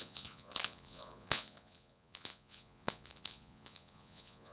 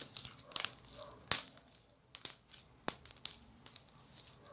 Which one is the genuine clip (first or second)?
second